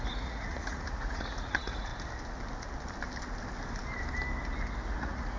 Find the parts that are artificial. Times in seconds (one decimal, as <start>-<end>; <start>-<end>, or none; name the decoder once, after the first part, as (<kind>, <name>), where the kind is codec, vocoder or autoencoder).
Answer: 0.0-1.9 (vocoder, Vocos); 4.9-5.4